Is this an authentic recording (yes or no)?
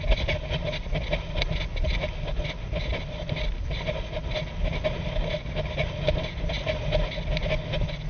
yes